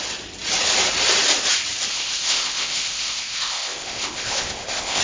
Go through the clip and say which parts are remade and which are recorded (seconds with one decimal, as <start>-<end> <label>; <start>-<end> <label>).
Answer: 0.0-1.9 recorded; 1.9-5.0 remade